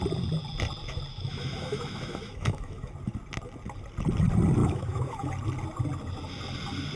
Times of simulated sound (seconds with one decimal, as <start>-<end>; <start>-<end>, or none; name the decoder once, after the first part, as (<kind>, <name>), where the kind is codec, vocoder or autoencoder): 1.1-2.9 (autoencoder, DAC-VAE); 4.6-5.3